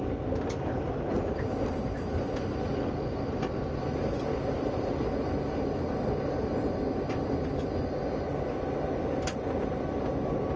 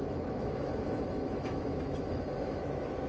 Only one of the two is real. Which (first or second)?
first